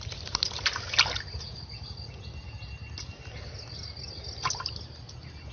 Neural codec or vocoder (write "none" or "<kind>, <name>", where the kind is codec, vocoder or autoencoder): none